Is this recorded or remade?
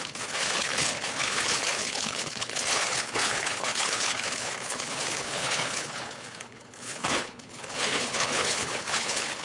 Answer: remade